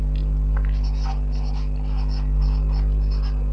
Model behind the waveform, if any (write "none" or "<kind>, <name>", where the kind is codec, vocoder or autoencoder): none